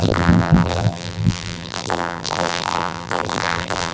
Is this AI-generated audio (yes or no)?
yes